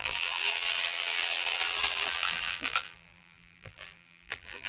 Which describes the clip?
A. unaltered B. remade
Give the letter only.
B